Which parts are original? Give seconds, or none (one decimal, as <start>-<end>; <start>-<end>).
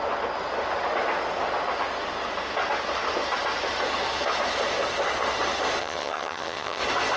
0.0-5.8; 6.8-7.2